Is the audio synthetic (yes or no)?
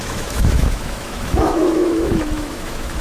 yes